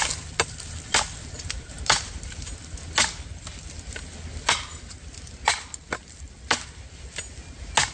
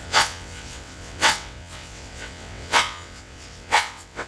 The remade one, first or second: second